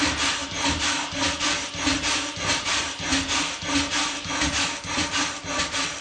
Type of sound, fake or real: real